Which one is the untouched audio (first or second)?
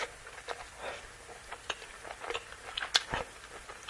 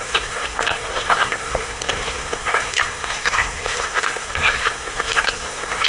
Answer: first